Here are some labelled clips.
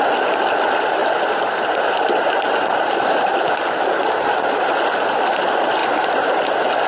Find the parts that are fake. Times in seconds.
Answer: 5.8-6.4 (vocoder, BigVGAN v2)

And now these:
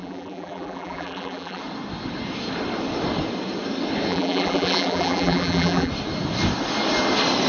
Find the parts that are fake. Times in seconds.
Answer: 0.0-1.6 (vocoder, BigVGAN v2); 4.1-5.9

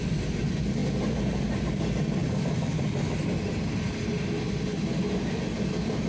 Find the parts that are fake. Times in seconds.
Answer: none